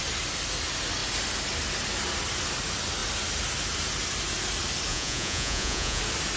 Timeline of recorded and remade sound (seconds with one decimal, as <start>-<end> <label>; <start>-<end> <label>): 0.0-4.9 recorded; 4.9-6.0 remade; 6.0-6.4 recorded